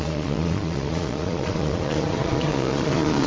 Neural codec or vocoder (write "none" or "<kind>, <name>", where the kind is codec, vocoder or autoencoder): vocoder, Vocos